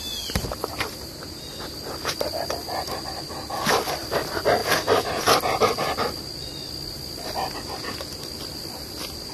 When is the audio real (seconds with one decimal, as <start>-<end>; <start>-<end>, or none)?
0.0-9.3